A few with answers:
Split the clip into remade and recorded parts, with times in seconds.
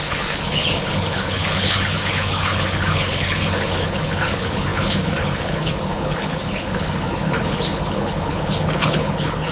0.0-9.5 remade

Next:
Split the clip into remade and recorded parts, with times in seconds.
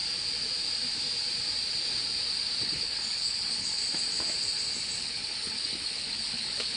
0.0-2.6 recorded; 2.6-3.8 remade; 3.8-5.0 recorded; 5.0-6.8 remade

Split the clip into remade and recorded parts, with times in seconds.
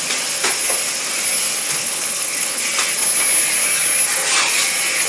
0.0-1.6 recorded; 1.6-2.6 remade; 2.6-5.1 recorded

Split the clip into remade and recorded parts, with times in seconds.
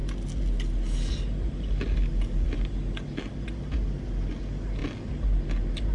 0.0-5.9 recorded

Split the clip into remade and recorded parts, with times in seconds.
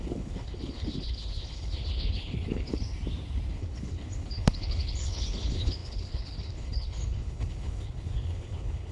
0.0-2.8 remade; 2.8-3.5 recorded; 3.5-8.9 remade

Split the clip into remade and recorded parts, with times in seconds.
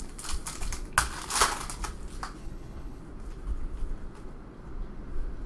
0.0-2.4 recorded; 2.4-3.0 remade; 3.0-5.5 recorded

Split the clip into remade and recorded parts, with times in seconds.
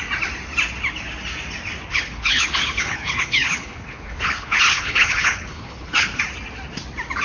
0.0-1.9 recorded; 1.9-6.2 remade; 6.2-7.2 recorded